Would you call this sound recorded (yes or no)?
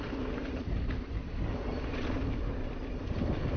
yes